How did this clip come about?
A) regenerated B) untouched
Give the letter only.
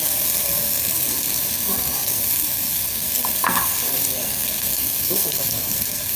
A